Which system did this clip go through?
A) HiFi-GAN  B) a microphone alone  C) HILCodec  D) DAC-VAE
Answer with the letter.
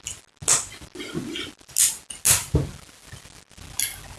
B